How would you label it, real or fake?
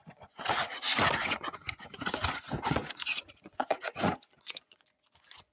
fake